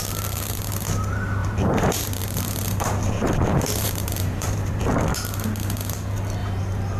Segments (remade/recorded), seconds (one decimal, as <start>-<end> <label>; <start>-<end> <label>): 0.0-1.4 recorded; 1.4-4.8 remade; 4.8-6.4 recorded; 6.4-7.0 remade